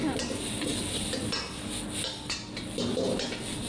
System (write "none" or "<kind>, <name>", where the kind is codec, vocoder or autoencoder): none